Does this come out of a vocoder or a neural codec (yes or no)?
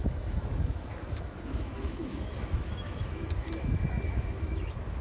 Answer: yes